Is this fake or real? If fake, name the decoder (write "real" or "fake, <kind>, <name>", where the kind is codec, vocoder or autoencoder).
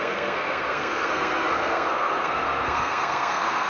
fake, codec, SNAC